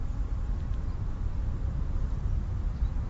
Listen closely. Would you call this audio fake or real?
fake